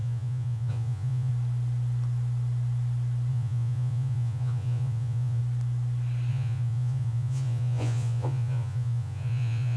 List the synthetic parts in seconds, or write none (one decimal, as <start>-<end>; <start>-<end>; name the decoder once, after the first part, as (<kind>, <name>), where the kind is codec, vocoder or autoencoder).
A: 0.0-1.3 (vocoder, Vocos); 3.3-5.4; 6.3-9.8